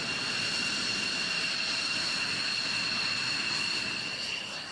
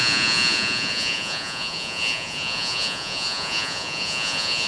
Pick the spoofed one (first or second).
second